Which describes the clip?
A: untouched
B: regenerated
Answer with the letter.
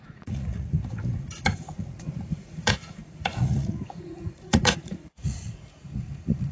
B